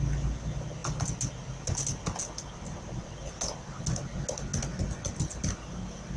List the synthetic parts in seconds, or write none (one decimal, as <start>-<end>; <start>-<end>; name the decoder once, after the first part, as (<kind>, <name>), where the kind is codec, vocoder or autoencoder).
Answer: none